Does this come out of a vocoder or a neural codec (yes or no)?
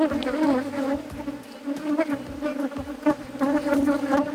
no